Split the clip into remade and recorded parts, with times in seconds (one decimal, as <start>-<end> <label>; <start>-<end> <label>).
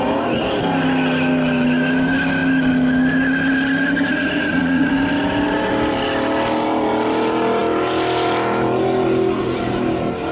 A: 0.0-4.1 recorded; 4.1-4.9 remade; 4.9-10.3 recorded